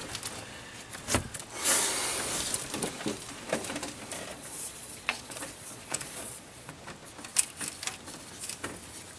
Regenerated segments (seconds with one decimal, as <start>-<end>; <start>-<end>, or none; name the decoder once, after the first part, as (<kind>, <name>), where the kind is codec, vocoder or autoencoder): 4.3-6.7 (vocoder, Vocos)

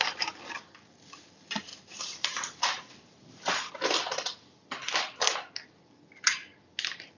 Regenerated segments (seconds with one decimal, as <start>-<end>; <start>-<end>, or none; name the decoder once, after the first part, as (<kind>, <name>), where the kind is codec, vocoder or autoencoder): 1.7-3.7 (vocoder, BigVGAN v2)

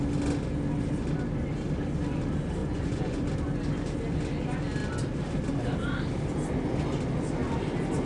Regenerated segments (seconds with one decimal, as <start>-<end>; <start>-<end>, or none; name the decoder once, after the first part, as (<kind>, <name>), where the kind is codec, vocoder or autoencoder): 2.6-3.2 (vocoder, Vocos)

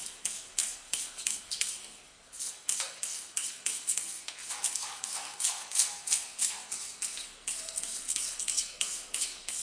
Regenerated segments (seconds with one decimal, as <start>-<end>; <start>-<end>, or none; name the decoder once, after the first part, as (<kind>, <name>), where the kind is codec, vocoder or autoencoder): 0.0-9.6 (codec, SNAC)

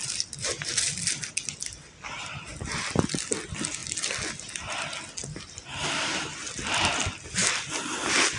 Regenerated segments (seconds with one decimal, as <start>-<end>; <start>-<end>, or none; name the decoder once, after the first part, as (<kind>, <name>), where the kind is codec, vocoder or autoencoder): 0.0-1.1 (vocoder, BigVGAN v2)